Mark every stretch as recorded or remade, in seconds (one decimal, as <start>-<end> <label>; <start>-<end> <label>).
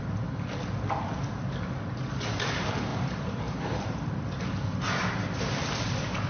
0.0-2.9 recorded; 2.9-4.1 remade; 4.1-6.3 recorded